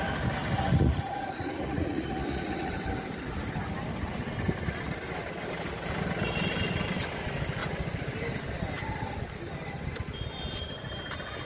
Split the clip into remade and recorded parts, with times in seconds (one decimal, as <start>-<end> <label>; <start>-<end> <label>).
0.0-0.4 recorded; 0.4-2.7 remade; 2.7-11.4 recorded